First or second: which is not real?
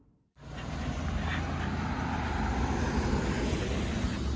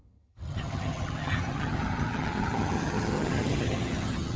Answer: second